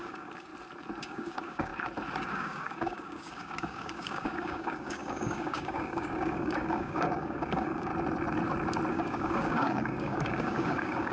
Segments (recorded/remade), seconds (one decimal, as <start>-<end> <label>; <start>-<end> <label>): 0.0-0.5 remade; 0.5-1.0 recorded; 1.0-1.7 remade; 1.7-2.3 recorded; 2.3-7.9 remade; 7.9-8.9 recorded; 8.9-11.1 remade